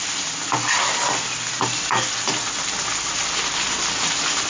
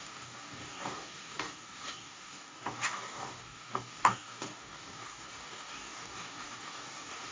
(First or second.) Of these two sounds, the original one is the first